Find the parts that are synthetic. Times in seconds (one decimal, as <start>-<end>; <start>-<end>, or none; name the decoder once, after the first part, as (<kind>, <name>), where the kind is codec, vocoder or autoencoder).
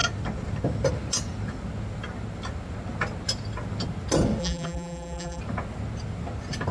4.4-5.4 (vocoder, BigVGAN v2)